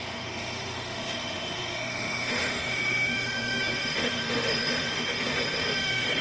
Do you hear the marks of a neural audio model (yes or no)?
yes